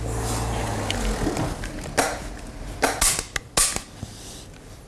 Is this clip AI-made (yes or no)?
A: no